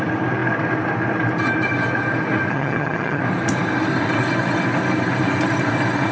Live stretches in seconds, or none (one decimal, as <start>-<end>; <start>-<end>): 0.0-2.5; 3.2-6.1